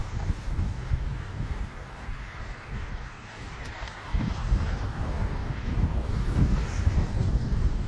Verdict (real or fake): fake